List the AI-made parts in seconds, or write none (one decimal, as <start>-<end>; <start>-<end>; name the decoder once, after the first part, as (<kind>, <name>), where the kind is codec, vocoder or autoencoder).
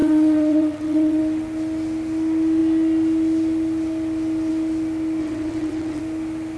0.0-1.2 (vocoder, WaveNeXt); 5.2-6.0